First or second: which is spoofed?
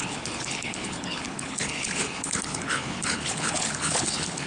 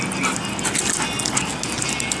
first